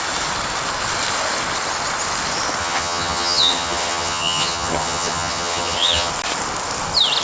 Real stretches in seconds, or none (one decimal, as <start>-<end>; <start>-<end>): 0.0-2.6; 6.1-7.2